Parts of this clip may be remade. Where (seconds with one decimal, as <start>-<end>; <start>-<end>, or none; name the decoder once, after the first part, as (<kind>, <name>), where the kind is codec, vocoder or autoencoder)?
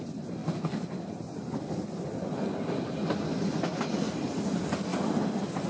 none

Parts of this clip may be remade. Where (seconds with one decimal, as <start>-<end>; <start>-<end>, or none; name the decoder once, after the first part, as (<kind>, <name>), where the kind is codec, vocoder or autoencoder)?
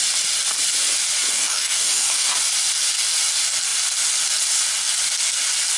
1.3-2.3 (codec, DAC)